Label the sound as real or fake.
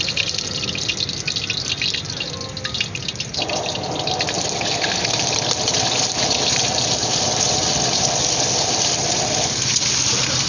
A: real